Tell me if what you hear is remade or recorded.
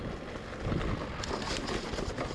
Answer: recorded